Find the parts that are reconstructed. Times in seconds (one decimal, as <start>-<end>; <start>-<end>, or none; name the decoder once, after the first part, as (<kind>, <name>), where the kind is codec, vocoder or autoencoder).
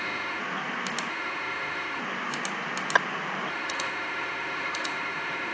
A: 0.0-0.4 (autoencoder, DAC-VAE); 1.1-2.0; 3.5-5.5